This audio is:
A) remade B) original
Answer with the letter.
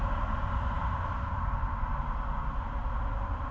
B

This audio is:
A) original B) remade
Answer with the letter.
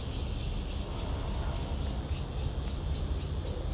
A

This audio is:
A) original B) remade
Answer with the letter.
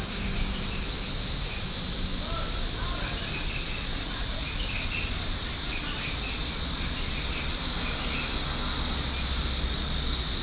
A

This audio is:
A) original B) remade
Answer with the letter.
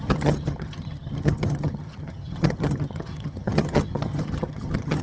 B